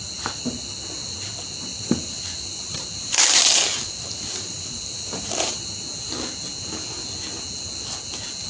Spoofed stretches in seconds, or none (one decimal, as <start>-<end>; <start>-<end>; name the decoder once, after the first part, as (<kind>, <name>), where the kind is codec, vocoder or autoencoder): 1.7-5.6 (vocoder, BigVGAN v2)